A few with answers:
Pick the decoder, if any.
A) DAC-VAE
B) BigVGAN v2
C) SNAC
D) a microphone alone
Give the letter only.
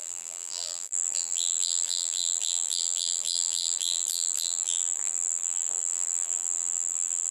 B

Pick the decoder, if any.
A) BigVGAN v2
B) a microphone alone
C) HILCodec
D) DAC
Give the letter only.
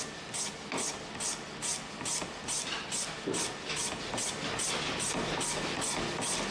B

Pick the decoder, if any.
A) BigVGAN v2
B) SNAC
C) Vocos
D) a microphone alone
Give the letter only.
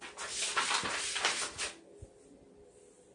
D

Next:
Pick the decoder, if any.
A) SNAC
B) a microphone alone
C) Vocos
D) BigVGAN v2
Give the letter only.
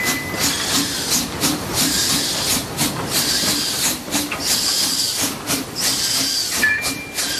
B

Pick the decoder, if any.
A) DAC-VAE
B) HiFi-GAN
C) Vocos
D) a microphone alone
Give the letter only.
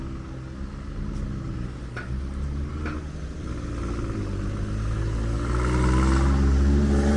D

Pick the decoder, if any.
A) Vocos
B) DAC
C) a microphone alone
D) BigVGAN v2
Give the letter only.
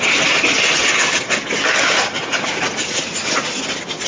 C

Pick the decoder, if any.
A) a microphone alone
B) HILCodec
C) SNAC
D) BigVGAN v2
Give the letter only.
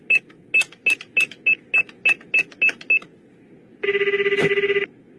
A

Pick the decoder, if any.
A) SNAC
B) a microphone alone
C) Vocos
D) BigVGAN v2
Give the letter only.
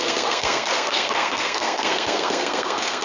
A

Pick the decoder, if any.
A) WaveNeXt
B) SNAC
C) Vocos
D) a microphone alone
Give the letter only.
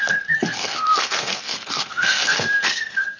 B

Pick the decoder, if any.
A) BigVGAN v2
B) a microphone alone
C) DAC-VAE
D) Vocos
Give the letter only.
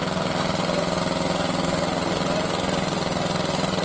B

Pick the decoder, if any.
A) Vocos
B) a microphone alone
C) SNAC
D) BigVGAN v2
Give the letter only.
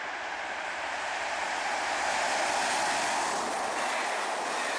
B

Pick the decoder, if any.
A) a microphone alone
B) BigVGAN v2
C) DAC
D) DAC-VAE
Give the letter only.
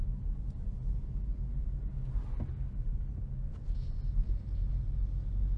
A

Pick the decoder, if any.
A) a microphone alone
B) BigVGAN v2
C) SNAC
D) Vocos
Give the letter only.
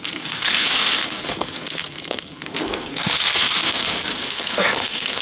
C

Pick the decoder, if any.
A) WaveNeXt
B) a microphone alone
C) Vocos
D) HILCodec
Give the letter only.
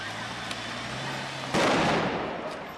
B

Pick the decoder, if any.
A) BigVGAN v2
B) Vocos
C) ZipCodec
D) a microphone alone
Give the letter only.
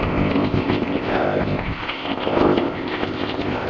C